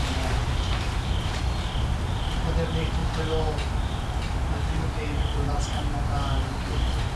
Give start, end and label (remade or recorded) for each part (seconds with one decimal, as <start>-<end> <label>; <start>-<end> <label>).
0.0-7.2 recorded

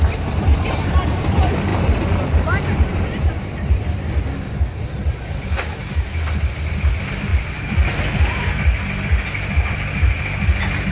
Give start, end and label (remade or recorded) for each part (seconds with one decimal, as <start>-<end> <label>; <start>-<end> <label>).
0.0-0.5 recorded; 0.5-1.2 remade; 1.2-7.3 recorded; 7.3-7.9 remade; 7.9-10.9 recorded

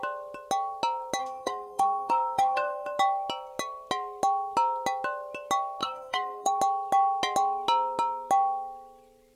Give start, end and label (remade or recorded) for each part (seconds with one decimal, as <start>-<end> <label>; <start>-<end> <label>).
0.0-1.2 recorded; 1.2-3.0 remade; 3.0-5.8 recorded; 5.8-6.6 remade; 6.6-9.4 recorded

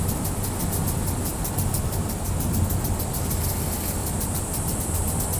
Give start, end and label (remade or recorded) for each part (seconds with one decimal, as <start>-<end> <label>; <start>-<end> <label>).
0.0-1.3 recorded; 1.3-2.6 remade; 2.6-4.0 recorded; 4.0-4.8 remade; 4.8-5.4 recorded

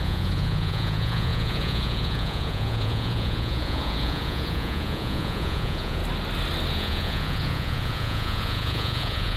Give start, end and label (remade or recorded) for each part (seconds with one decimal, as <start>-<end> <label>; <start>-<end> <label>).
0.0-6.0 remade; 6.0-6.7 recorded; 6.7-9.4 remade